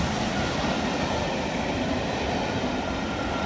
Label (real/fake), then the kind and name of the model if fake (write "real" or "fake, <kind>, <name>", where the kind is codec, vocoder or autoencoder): real